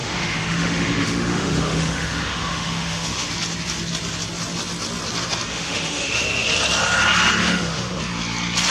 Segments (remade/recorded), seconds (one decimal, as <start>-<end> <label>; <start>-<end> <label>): 0.0-3.3 remade; 3.3-5.5 recorded; 5.5-6.2 remade; 6.2-7.4 recorded; 7.4-8.0 remade; 8.0-8.7 recorded

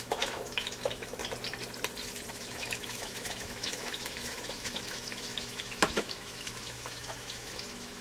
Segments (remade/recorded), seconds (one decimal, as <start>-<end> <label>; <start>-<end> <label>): 0.0-1.2 remade; 1.2-2.3 recorded; 2.3-8.0 remade

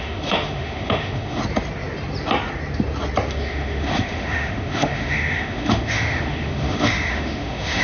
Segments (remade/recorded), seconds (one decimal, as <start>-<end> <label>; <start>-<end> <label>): 0.0-1.4 remade; 1.4-3.3 recorded; 3.3-7.8 remade

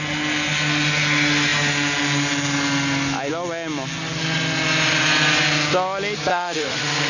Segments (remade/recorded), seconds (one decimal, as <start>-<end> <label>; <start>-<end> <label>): 0.0-6.3 recorded; 6.3-7.1 remade

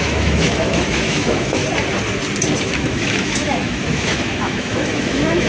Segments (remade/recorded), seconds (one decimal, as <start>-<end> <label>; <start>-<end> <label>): 0.0-1.6 remade; 1.6-2.6 recorded; 2.6-5.5 remade

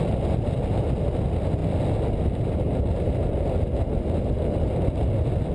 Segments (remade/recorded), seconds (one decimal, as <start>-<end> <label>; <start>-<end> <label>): 0.0-5.5 recorded